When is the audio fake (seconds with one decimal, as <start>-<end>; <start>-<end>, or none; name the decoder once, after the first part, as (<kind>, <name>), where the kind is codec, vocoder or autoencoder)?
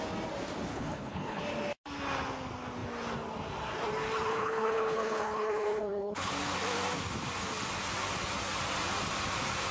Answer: 0.7-1.4 (codec, HILCodec); 4.3-6.3